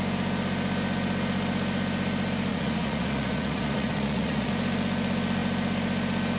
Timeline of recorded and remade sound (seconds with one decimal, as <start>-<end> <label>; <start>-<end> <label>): 0.0-2.5 recorded; 2.5-4.5 remade; 4.5-6.4 recorded